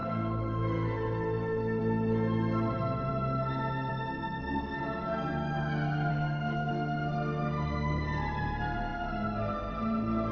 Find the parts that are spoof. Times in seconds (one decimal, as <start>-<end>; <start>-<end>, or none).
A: 6.1-6.7